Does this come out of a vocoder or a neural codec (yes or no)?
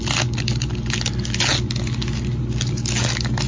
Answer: no